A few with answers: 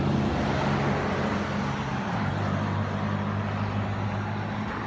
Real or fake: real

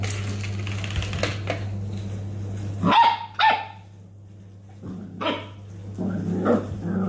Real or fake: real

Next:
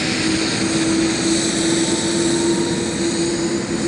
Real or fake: real